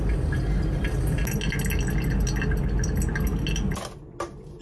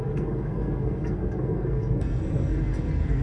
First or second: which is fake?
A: second